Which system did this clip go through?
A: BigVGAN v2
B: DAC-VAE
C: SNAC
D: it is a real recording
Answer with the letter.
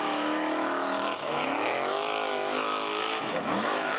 B